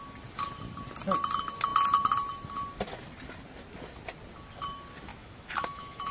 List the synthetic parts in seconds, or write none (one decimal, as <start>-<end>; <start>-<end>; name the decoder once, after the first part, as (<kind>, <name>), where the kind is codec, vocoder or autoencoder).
5.1-6.1 (autoencoder, DAC-VAE)